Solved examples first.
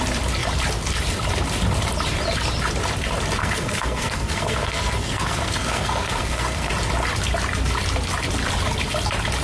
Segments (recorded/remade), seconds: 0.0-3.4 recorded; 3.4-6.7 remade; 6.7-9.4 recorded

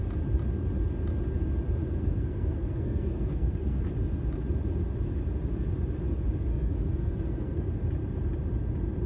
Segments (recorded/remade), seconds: 0.0-1.8 recorded; 1.8-3.8 remade; 3.8-6.5 recorded; 6.5-7.7 remade; 7.7-9.1 recorded

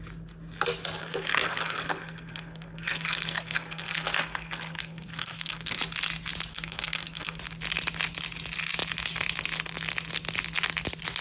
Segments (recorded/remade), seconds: 0.0-1.0 recorded; 1.0-5.8 remade; 5.8-6.5 recorded; 6.5-7.4 remade; 7.4-11.2 recorded

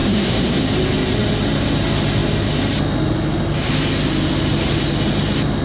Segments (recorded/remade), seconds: 0.0-0.6 remade; 0.6-5.6 recorded

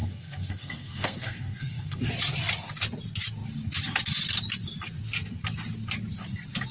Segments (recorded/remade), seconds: 0.0-2.1 remade; 2.1-6.7 recorded

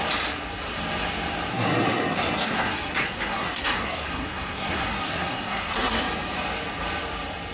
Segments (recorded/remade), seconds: 0.0-1.5 recorded; 1.5-6.0 remade; 6.0-7.5 recorded